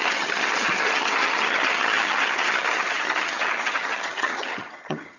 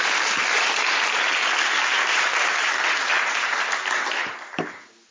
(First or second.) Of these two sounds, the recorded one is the second